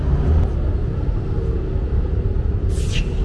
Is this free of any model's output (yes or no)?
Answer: yes